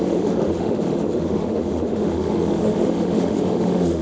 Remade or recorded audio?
remade